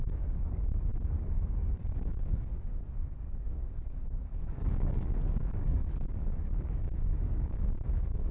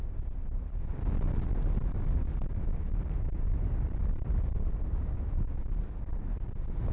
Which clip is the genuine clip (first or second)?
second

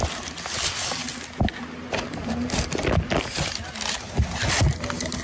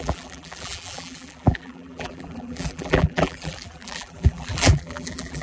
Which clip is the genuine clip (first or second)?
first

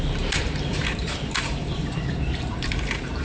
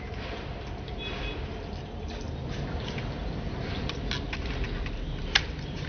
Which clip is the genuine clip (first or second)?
second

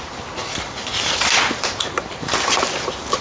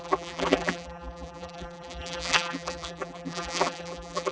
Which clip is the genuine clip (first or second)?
first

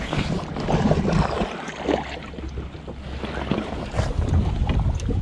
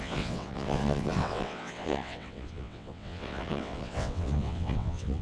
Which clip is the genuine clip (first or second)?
first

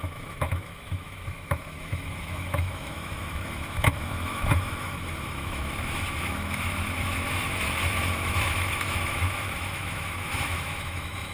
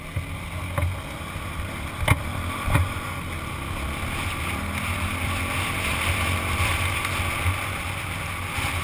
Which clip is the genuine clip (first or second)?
second